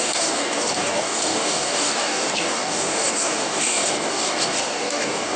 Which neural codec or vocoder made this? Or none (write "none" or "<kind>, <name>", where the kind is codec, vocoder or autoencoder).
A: codec, DAC